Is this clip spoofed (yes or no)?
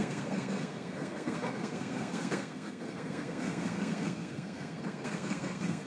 yes